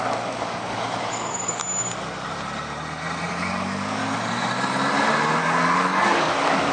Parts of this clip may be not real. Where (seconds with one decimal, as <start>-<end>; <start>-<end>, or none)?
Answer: 0.0-1.6; 3.3-4.0; 5.4-6.7